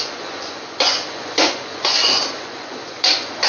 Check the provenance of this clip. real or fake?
fake